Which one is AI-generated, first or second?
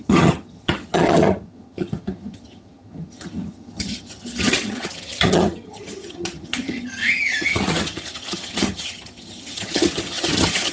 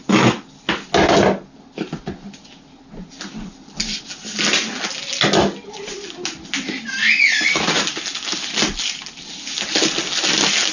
first